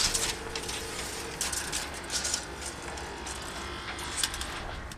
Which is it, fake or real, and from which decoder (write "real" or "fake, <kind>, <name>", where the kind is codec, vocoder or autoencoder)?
real